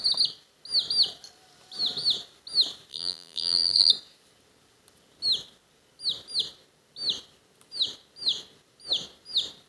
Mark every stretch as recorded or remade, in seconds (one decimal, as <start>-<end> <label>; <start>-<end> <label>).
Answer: 0.0-2.9 recorded; 2.9-3.9 remade; 3.9-9.7 recorded